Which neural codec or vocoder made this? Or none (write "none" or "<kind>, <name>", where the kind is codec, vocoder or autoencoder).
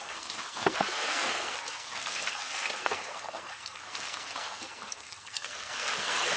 codec, SNAC